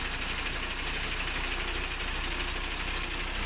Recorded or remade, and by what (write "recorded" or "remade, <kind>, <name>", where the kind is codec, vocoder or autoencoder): recorded